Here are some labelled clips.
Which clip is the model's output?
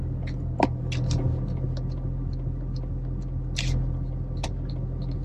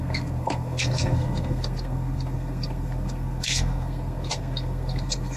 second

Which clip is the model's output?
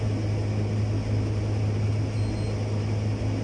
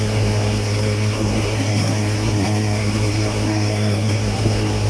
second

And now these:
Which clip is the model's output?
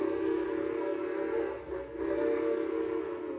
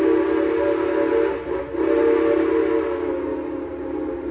first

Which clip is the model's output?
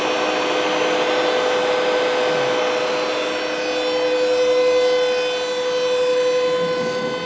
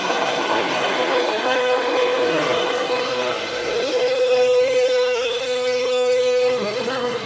second